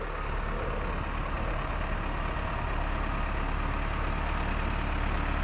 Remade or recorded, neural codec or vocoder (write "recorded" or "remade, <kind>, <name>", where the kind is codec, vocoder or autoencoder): recorded